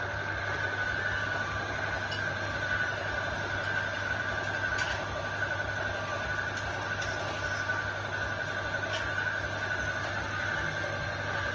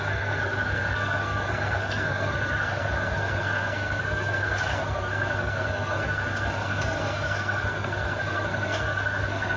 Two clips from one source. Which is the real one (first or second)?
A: first